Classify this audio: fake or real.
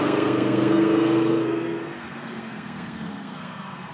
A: fake